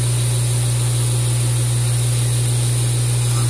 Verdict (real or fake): real